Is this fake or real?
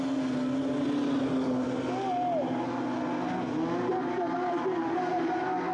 real